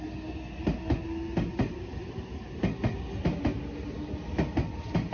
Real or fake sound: real